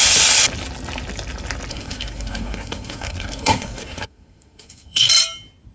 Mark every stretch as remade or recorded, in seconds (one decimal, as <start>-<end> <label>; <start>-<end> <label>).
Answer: 0.0-1.7 recorded; 1.7-5.1 remade; 5.1-5.7 recorded